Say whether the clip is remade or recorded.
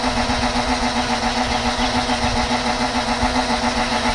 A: remade